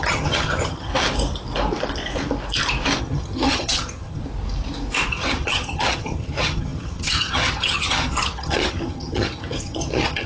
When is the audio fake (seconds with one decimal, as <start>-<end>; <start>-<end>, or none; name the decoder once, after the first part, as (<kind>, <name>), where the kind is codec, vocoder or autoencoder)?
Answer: 0.0-0.9 (vocoder, HiFi-GAN); 3.0-4.2; 5.1-10.3